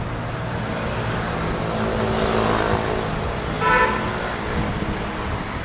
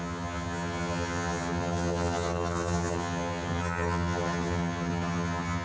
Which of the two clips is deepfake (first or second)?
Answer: second